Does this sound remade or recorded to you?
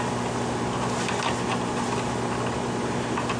recorded